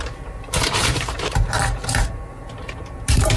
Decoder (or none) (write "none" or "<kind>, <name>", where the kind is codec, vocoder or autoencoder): vocoder, BigVGAN v2